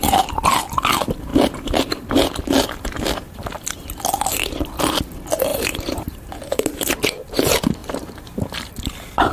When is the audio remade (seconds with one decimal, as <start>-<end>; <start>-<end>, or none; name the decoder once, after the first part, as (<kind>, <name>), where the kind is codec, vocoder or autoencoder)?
5.5-6.9 (vocoder, BigVGAN v2)